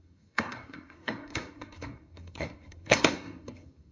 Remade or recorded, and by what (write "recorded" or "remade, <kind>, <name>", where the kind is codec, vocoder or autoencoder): remade, codec, SNAC